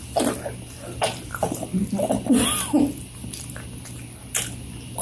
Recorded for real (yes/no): yes